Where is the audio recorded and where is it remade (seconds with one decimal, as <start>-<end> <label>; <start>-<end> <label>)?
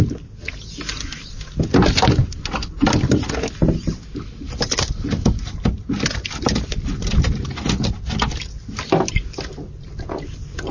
0.0-10.7 recorded